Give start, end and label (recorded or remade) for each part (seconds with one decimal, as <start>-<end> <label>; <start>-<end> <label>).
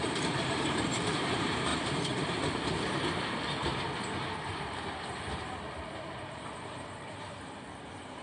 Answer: 0.0-3.7 remade; 3.7-4.5 recorded; 4.5-8.2 remade